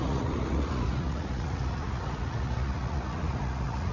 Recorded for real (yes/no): no